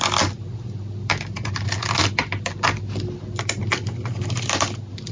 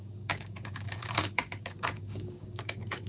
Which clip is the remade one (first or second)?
second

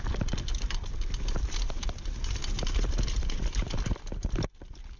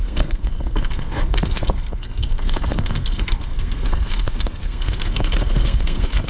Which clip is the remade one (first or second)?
second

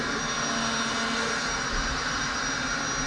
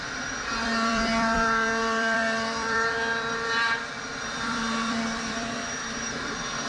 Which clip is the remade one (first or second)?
second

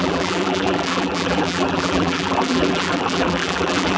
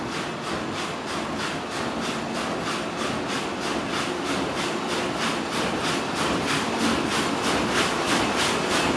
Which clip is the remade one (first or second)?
first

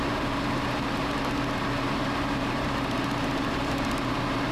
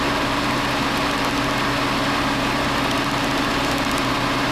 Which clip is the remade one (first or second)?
first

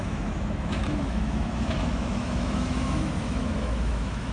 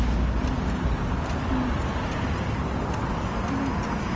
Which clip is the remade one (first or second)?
first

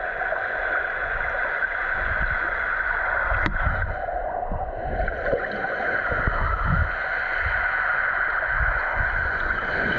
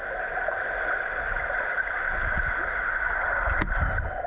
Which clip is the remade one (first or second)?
first